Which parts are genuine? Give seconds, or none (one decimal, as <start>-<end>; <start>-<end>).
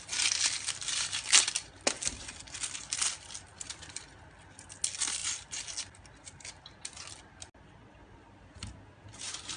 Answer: 0.0-9.6